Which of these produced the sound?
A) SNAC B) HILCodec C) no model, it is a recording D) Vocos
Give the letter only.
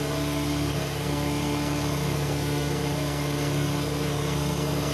A